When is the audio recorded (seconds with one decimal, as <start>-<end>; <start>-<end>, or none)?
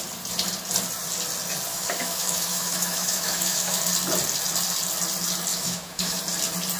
0.0-1.7; 3.8-5.5; 6.2-6.8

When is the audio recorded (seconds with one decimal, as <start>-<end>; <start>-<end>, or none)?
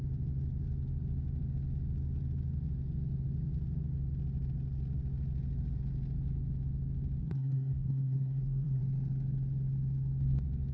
0.0-7.2; 8.8-10.7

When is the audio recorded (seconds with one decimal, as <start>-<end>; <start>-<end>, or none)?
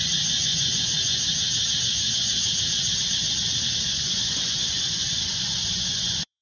1.3-1.8; 2.3-3.8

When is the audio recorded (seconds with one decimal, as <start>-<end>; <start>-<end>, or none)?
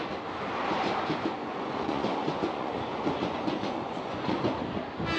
0.0-1.4; 4.5-5.2